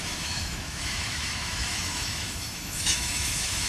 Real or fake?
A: fake